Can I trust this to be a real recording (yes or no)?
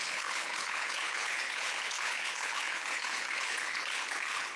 no